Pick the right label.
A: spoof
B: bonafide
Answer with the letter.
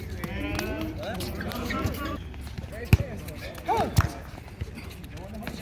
B